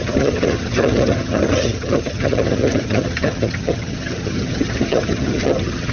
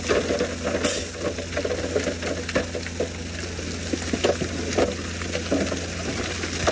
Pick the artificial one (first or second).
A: first